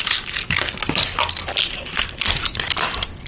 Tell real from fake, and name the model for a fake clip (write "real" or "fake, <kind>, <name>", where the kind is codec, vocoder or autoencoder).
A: real